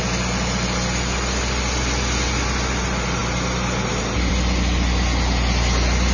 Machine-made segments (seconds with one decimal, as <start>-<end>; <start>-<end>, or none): none